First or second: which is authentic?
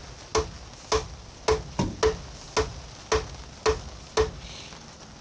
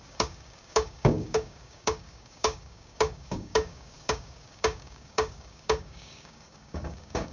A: first